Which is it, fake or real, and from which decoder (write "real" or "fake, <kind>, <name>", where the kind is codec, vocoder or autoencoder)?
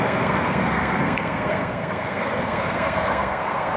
fake, codec, SNAC